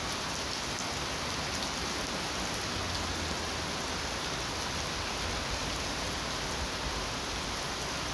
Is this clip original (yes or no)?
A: yes